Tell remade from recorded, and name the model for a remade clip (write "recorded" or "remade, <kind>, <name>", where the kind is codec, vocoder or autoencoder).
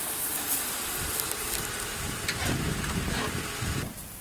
recorded